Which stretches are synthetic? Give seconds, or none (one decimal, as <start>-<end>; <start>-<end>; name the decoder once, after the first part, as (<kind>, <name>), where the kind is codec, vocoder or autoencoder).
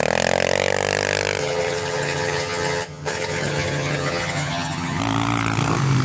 1.4-5.0 (vocoder, HiFi-GAN)